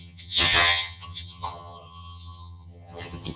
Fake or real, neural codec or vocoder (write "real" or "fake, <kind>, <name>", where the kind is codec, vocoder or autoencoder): fake, vocoder, HiFi-GAN